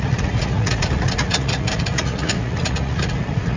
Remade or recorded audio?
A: remade